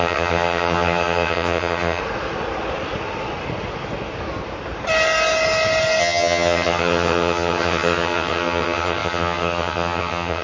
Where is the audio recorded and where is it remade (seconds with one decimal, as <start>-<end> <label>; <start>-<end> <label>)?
0.0-2.0 remade; 2.0-6.0 recorded; 6.0-10.4 remade